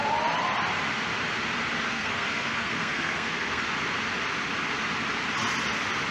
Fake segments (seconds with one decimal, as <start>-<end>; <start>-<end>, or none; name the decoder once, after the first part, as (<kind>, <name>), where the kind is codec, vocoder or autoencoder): 1.9-3.6 (codec, SNAC)